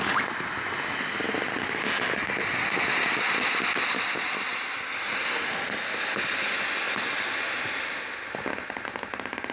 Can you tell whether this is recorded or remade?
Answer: recorded